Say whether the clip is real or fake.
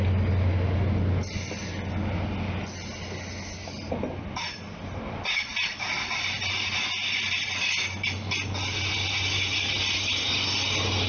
real